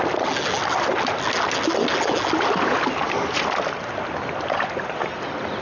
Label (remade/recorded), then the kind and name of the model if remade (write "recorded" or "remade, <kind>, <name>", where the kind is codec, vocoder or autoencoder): recorded